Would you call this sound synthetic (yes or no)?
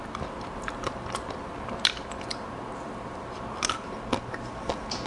no